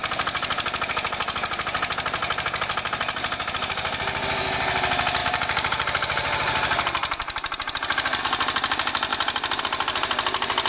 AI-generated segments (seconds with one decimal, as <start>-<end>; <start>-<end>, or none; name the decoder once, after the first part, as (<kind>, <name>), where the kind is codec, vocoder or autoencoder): 2.2-3.5 (vocoder, BigVGAN v2); 5.2-8.2